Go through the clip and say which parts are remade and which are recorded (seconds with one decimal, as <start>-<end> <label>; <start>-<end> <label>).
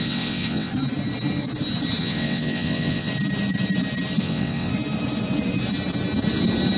0.0-0.7 remade; 0.7-2.0 recorded; 2.0-3.1 remade; 3.1-4.2 recorded; 4.2-4.7 remade; 4.7-6.8 recorded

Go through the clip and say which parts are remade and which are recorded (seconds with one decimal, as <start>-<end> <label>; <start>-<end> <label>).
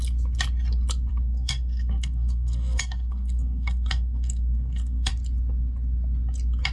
0.0-1.1 recorded; 1.1-5.1 remade; 5.1-6.7 recorded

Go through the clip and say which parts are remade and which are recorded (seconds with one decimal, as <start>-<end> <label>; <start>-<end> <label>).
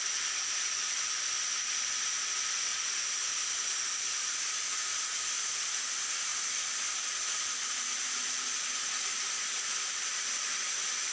0.0-11.1 recorded